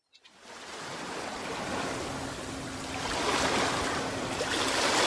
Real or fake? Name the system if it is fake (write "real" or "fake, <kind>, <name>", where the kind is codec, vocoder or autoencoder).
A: real